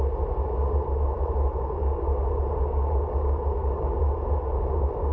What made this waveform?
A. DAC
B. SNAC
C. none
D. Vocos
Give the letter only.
C